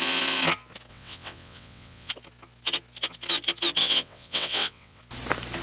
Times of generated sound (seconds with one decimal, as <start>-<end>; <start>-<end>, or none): 0.9-2.1; 3.8-5.0